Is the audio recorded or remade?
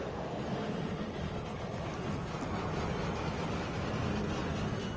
recorded